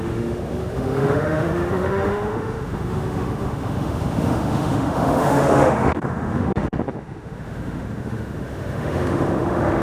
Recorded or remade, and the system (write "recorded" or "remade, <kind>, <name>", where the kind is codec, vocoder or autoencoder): remade, autoencoder, DAC-VAE